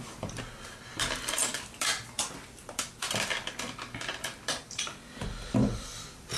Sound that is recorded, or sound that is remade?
remade